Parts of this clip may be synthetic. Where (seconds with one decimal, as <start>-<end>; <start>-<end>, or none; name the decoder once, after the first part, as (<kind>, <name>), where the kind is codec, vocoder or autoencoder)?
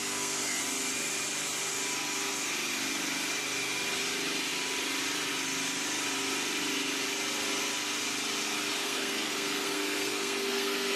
0.0-0.6 (codec, SNAC); 8.8-11.0